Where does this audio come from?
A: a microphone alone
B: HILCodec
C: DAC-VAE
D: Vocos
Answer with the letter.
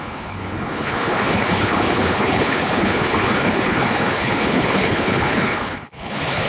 B